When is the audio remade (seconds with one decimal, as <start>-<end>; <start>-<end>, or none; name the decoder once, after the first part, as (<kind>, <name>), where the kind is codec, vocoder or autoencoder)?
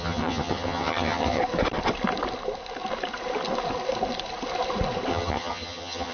0.0-1.4 (vocoder, HiFi-GAN); 5.1-6.1